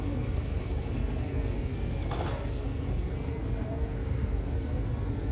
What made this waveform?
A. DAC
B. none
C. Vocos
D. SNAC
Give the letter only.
D